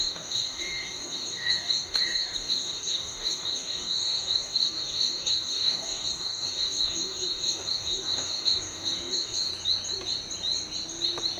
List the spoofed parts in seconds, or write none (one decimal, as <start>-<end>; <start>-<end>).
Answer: 0.0-9.5